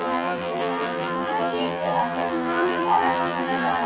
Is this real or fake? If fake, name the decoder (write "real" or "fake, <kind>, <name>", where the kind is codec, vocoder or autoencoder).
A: fake, vocoder, BigVGAN v2